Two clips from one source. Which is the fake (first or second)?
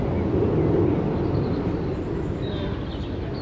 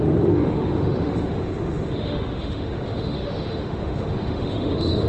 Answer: second